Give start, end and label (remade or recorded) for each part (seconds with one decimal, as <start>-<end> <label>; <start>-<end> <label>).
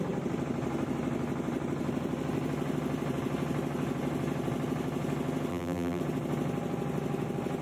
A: 0.0-5.5 recorded; 5.5-6.0 remade; 6.0-7.6 recorded